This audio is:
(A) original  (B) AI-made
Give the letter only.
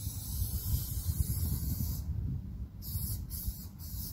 B